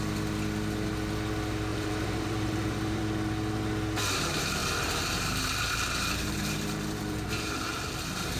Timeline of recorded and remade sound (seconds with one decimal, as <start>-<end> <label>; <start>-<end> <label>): 0.0-1.7 recorded; 1.7-3.0 remade; 3.0-4.6 recorded; 4.6-8.4 remade